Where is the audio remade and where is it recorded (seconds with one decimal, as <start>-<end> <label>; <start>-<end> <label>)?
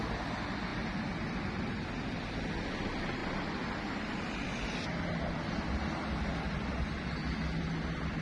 0.0-8.2 recorded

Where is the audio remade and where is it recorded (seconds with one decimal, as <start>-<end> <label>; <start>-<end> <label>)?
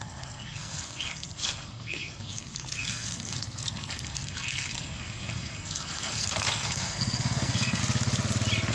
0.0-7.8 remade; 7.8-8.7 recorded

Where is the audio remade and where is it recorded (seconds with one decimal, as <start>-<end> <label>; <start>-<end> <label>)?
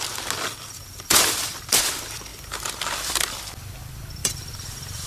0.0-0.8 recorded; 0.8-1.9 remade; 1.9-2.3 recorded; 2.3-3.2 remade; 3.2-4.2 recorded; 4.2-5.1 remade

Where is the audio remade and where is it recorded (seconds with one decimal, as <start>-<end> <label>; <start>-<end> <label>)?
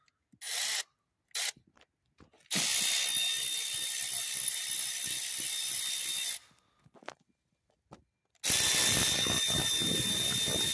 0.0-10.7 recorded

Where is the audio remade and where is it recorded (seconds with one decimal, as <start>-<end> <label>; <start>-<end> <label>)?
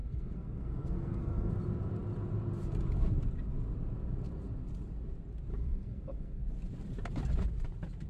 0.0-1.5 remade; 1.5-5.5 recorded; 5.5-6.4 remade; 6.4-8.1 recorded